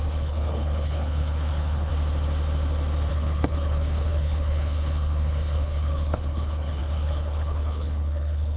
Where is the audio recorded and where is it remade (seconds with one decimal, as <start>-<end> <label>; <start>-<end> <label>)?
0.0-1.9 remade; 1.9-3.1 recorded; 3.1-8.6 remade

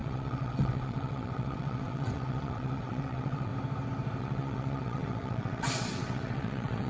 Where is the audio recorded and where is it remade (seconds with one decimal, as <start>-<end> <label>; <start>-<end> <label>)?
0.0-3.5 remade; 3.5-4.2 recorded; 4.2-6.9 remade